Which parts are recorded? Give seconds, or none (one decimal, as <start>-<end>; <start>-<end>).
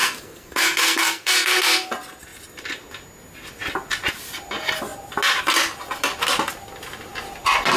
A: 1.9-7.8